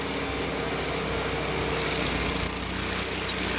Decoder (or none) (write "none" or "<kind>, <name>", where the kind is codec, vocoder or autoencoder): none